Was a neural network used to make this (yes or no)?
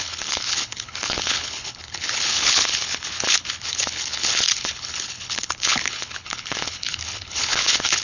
yes